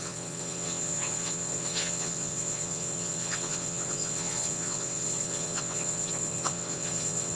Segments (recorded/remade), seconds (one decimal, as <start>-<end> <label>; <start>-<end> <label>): 0.0-7.4 remade